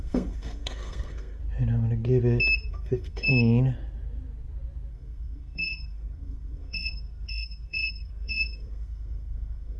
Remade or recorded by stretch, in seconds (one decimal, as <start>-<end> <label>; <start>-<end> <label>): 0.0-1.4 remade; 1.4-2.7 recorded; 2.7-3.3 remade; 3.3-4.9 recorded; 4.9-9.8 remade